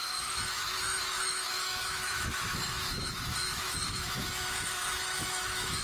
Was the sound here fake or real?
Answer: fake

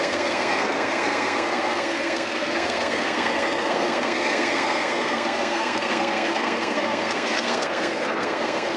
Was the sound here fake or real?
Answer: fake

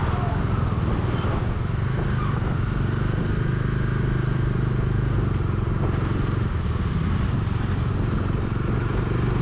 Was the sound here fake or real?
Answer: real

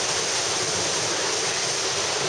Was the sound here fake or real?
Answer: real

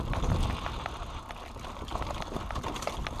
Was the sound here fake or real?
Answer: real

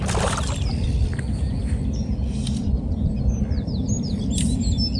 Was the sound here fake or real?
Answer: real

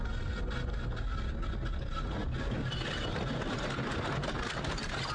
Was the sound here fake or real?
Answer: real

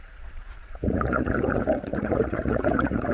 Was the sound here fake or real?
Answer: fake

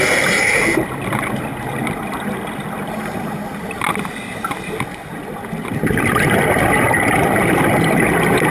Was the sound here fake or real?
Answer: real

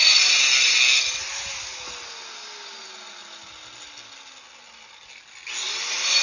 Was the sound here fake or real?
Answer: real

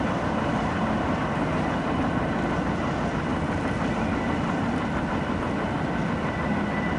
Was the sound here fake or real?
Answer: real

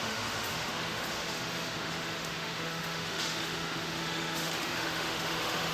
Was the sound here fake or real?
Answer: fake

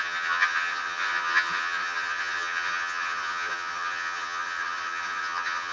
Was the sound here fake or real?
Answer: fake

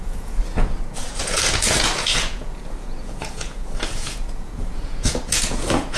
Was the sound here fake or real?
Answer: fake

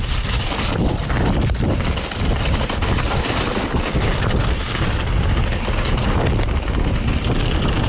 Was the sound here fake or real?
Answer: real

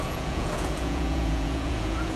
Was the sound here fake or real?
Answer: fake